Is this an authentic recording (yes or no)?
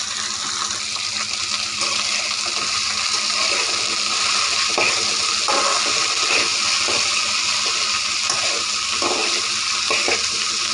yes